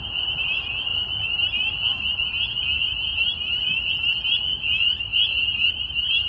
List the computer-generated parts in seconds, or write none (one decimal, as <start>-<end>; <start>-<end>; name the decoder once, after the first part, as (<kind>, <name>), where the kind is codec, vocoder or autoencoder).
none